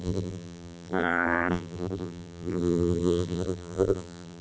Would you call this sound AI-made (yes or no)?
yes